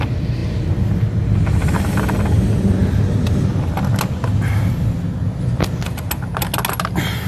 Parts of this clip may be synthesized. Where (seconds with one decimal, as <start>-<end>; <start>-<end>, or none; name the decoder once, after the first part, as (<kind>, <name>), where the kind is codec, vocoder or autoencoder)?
none

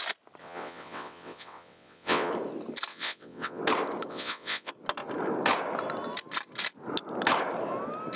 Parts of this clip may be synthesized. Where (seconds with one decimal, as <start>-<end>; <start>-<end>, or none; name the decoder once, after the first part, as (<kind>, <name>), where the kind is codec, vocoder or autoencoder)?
0.4-2.3 (vocoder, WaveNeXt); 2.9-3.6; 4.1-4.7